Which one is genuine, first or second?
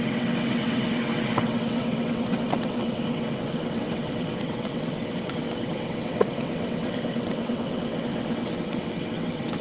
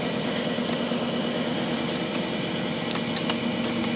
second